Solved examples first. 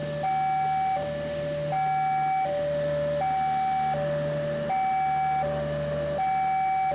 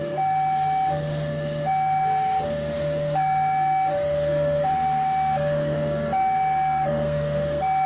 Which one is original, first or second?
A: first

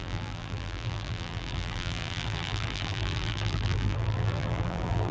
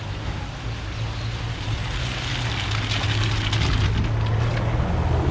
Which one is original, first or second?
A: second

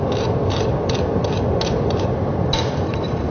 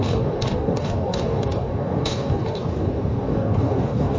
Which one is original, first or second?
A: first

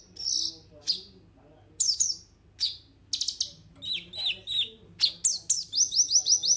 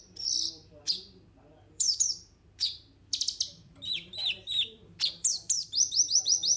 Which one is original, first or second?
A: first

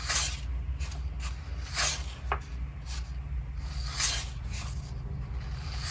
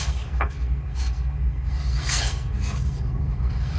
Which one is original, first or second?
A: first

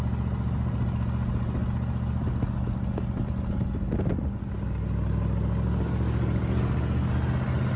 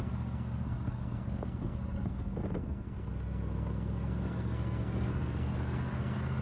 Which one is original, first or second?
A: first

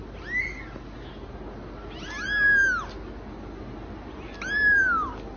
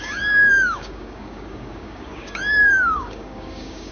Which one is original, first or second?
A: first